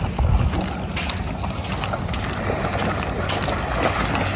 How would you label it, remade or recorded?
recorded